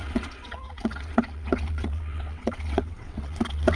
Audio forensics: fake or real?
fake